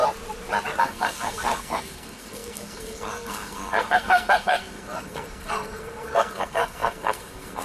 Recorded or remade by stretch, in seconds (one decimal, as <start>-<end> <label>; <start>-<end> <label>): 0.0-0.8 recorded; 0.8-7.6 remade